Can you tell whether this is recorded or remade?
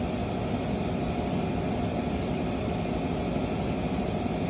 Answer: recorded